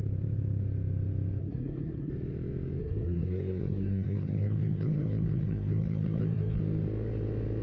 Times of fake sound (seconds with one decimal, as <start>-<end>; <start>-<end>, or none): 1.4-2.1; 2.8-6.6